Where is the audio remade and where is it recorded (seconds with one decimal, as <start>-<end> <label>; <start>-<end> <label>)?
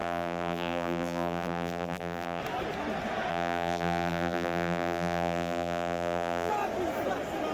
0.0-2.4 remade; 2.4-3.3 recorded; 3.3-6.5 remade; 6.5-7.5 recorded